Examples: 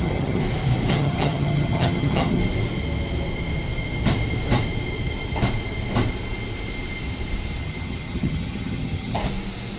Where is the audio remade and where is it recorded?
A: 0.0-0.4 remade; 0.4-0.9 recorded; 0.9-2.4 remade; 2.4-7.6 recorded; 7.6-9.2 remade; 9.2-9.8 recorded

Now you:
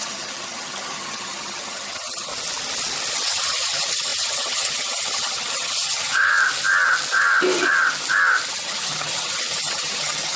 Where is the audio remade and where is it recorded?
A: 0.0-2.3 remade; 2.3-3.1 recorded; 3.1-6.3 remade; 6.3-8.5 recorded; 8.5-10.4 remade

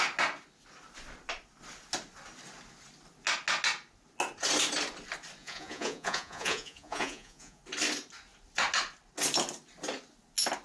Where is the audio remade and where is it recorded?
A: 0.0-5.4 recorded; 5.4-7.6 remade; 7.6-10.6 recorded

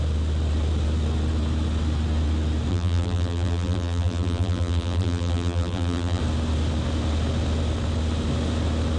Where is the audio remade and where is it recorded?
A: 0.0-2.7 recorded; 2.7-6.2 remade; 6.2-9.0 recorded

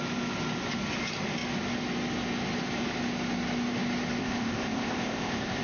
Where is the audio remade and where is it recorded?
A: 0.0-4.2 recorded; 4.2-5.6 remade